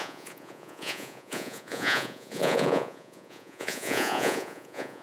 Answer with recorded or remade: remade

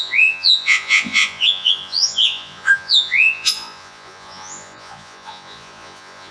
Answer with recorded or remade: remade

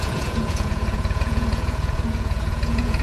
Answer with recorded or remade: remade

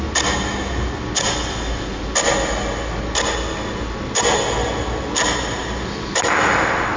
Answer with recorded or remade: recorded